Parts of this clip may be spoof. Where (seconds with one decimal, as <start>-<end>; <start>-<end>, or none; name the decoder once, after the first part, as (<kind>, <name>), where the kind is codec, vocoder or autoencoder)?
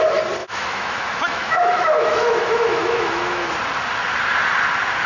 0.4-3.5 (autoencoder, DAC-VAE)